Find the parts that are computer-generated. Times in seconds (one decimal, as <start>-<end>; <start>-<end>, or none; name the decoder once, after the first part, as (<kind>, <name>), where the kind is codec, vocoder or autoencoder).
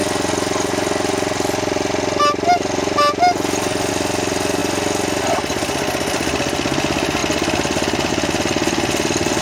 none